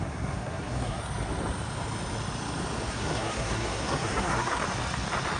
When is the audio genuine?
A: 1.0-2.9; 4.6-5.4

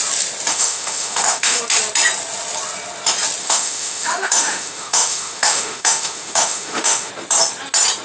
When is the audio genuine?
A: 0.0-0.5; 1.6-3.4; 7.1-8.0

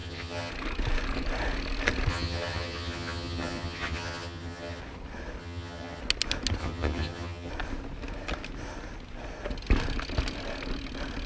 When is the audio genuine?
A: 0.5-2.1; 4.8-5.4; 6.0-6.6; 7.5-11.3